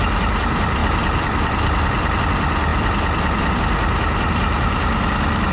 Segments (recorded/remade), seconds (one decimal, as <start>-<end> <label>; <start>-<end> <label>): 0.0-0.8 recorded; 0.8-2.2 remade; 2.2-5.5 recorded